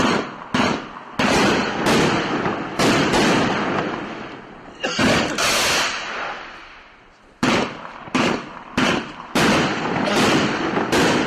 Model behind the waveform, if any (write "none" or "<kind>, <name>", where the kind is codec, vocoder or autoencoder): none